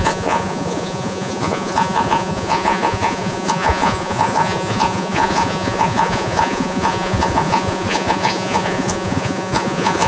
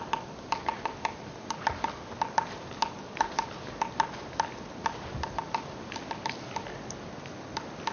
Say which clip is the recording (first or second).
second